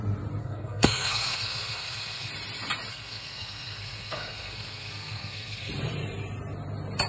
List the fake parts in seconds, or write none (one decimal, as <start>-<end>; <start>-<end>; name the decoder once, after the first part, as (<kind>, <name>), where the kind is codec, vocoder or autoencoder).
0.4-2.3 (codec, SNAC); 2.9-5.7